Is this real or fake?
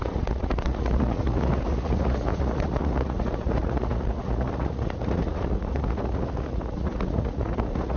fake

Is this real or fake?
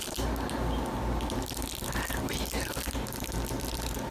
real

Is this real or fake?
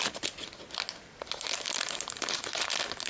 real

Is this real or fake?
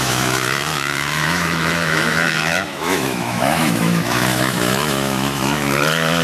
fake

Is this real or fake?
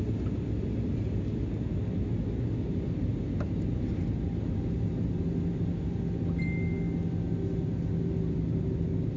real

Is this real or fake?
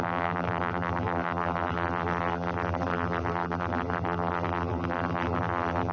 fake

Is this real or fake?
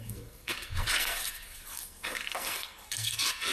fake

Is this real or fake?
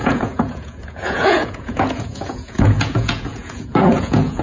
fake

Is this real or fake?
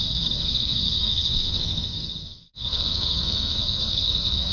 fake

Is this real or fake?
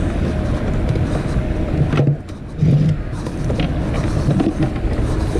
real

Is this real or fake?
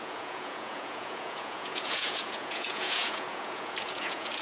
fake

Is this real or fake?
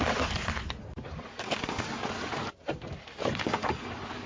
real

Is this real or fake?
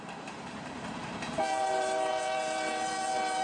fake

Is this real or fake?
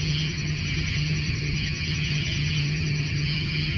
fake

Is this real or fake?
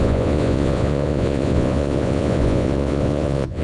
fake